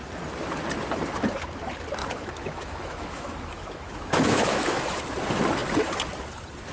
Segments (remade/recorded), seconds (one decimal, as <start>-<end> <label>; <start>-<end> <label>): 0.0-2.0 recorded; 2.0-5.0 remade; 5.0-6.7 recorded